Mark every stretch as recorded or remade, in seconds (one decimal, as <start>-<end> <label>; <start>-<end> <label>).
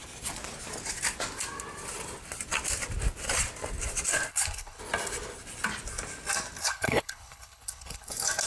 0.0-4.3 recorded; 4.3-4.8 remade; 4.8-6.6 recorded; 6.6-8.1 remade; 8.1-8.5 recorded